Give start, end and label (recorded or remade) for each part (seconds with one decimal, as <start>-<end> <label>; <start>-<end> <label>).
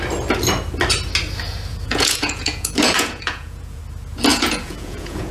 0.0-1.7 recorded; 1.7-3.8 remade; 3.8-4.3 recorded; 4.3-5.3 remade